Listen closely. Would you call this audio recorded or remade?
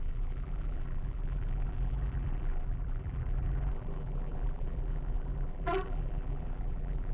remade